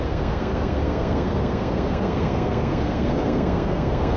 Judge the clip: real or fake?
fake